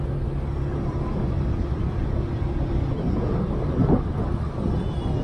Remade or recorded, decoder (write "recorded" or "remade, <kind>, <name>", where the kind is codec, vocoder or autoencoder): recorded